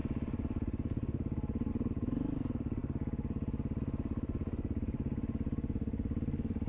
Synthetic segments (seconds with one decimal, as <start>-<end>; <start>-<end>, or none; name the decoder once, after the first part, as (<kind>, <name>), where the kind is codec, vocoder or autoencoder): 0.0-1.7 (vocoder, BigVGAN v2)